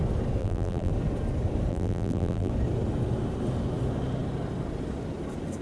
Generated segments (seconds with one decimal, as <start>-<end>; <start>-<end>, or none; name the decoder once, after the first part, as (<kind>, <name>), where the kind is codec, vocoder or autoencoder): 0.4-0.9 (vocoder, BigVGAN v2); 1.7-2.5